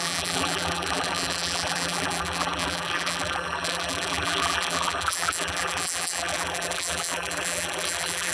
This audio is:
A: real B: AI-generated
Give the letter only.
B